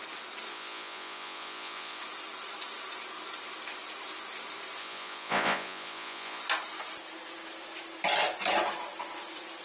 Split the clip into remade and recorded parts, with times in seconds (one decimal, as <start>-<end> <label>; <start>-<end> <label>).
0.0-0.5 recorded; 0.5-2.0 remade; 2.0-4.8 recorded; 4.8-6.4 remade; 6.4-9.6 recorded